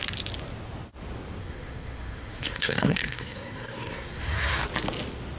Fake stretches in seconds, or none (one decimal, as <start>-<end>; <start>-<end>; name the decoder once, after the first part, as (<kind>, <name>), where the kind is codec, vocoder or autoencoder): 1.4-4.6 (codec, SNAC)